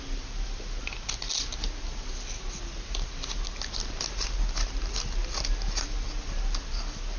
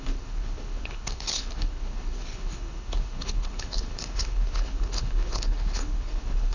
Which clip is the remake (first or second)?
second